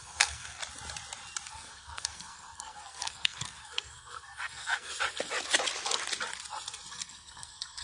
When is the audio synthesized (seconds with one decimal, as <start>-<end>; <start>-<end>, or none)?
0.0-0.6; 1.5-4.9; 6.9-7.8